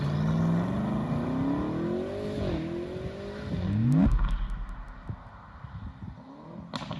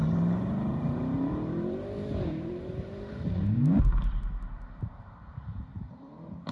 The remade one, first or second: second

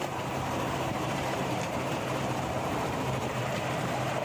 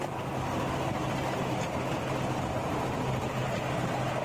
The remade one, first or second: first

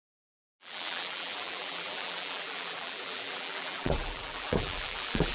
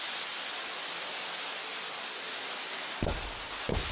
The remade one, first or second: first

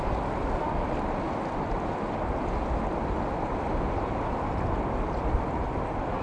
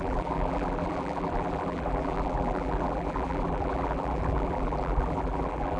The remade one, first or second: second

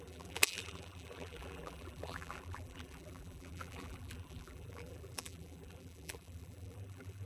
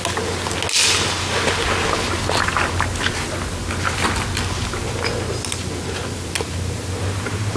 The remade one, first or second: first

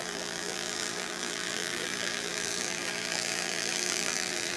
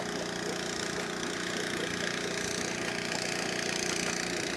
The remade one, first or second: first